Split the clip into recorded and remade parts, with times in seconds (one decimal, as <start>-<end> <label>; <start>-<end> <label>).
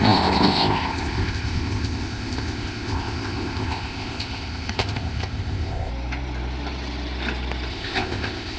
0.0-5.9 remade; 5.9-7.7 recorded; 7.7-8.6 remade